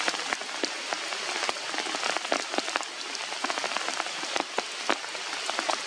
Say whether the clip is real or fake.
real